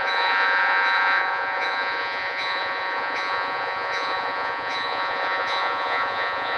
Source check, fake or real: fake